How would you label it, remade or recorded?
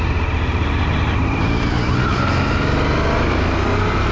recorded